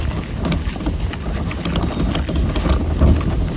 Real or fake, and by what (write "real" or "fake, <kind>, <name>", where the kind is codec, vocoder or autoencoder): real